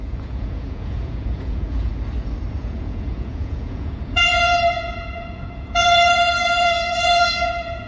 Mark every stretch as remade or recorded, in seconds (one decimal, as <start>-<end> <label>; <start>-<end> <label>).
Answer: 0.0-1.9 remade; 1.9-2.6 recorded; 2.6-7.9 remade